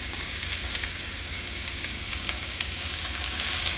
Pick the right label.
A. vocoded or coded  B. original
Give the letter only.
A